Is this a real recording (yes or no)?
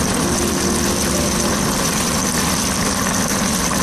yes